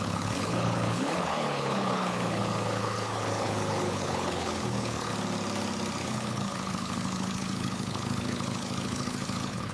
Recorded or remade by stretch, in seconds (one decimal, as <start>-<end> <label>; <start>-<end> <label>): 0.0-5.1 remade; 5.1-6.0 recorded; 6.0-9.7 remade